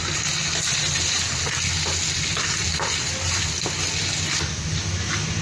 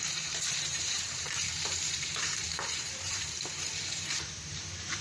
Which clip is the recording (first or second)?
first